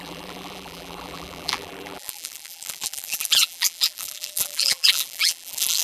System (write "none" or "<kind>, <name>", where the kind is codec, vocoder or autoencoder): vocoder, BigVGAN v2